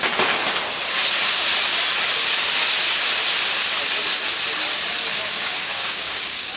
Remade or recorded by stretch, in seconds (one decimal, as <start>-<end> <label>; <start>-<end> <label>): 0.0-5.1 recorded; 5.1-6.6 remade